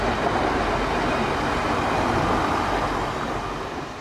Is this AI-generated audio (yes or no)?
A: no